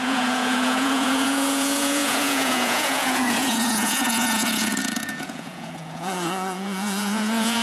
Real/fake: fake